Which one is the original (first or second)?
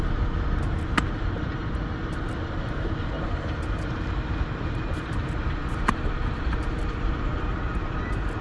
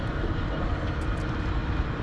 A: second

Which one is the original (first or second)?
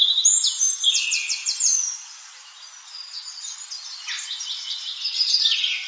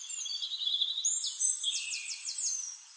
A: first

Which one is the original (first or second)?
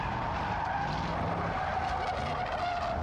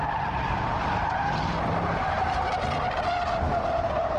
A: first